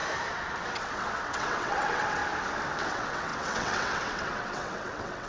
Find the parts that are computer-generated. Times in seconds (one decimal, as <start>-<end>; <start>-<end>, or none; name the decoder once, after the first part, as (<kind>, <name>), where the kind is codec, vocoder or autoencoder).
0.6-2.2 (vocoder, WaveNeXt); 2.8-5.3